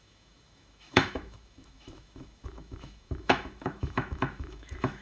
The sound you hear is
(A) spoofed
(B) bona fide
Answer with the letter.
A